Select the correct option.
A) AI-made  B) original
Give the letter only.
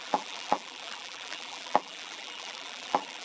A